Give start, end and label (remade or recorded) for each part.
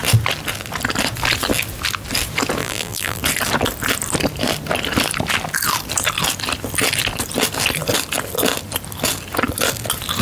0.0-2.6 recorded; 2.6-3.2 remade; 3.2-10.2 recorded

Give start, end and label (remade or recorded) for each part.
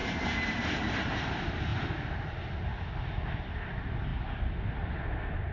0.0-0.5 recorded; 0.5-1.7 remade; 1.7-3.6 recorded; 3.6-4.1 remade; 4.1-5.5 recorded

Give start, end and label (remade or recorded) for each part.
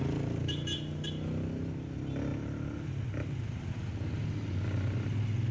0.0-5.5 recorded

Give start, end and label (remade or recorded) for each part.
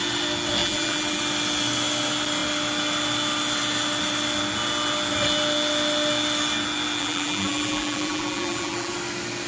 0.0-0.6 recorded; 0.6-1.2 remade; 1.2-7.0 recorded; 7.0-8.9 remade; 8.9-9.5 recorded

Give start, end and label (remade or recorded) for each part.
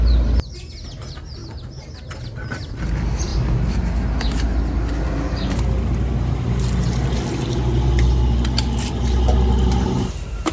0.0-10.5 recorded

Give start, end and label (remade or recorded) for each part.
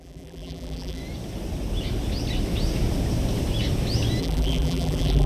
0.0-1.0 remade; 1.0-4.2 recorded; 4.2-5.3 remade